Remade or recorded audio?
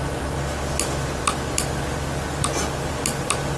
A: recorded